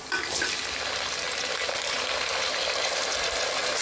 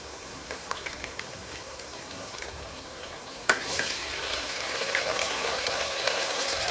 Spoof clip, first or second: second